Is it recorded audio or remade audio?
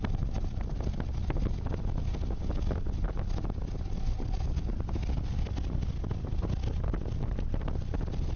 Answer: recorded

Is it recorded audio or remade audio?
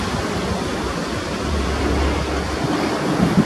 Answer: recorded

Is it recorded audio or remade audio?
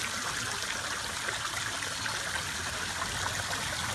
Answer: recorded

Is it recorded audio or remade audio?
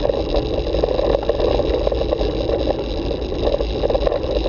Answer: recorded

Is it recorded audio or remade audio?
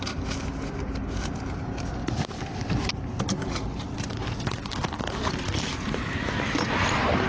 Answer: recorded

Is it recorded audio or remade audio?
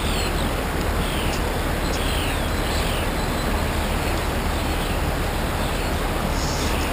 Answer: recorded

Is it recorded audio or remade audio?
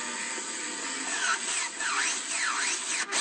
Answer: recorded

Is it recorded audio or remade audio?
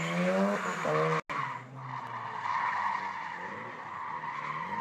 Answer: recorded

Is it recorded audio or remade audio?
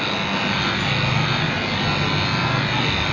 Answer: recorded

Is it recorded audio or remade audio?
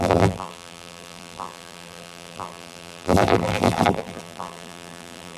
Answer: remade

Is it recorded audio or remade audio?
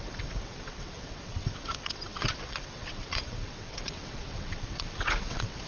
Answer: remade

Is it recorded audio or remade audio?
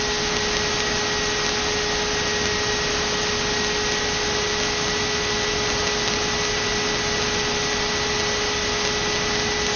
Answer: recorded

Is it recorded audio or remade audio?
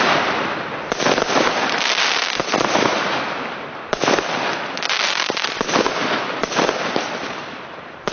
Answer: remade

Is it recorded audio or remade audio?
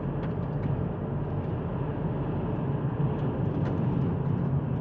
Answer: recorded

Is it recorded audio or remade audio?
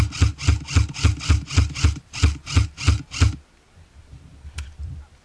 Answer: recorded